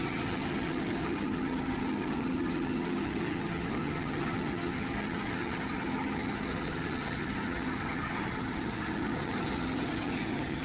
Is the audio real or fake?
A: fake